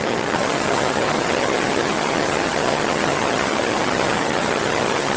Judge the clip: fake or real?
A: fake